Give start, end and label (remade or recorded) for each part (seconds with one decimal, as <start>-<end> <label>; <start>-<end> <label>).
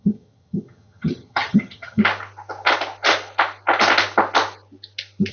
0.0-2.0 remade; 2.0-5.3 recorded